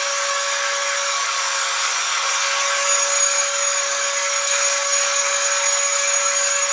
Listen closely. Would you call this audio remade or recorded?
remade